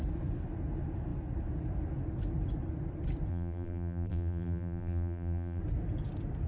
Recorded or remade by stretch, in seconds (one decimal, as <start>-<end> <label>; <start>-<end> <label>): 0.0-3.3 recorded; 3.3-5.6 remade; 5.6-6.5 recorded